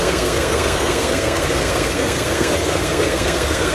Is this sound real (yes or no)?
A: no